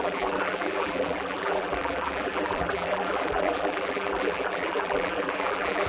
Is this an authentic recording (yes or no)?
no